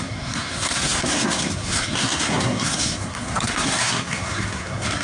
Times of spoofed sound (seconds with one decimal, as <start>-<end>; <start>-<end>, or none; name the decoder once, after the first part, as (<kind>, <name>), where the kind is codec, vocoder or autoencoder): 0.0-5.0 (codec, SNAC)